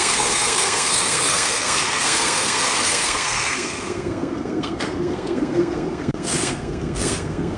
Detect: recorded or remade remade